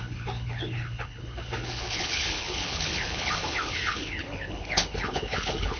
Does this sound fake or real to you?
fake